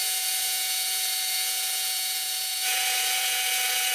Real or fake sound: fake